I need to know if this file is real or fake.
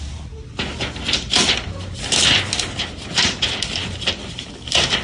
real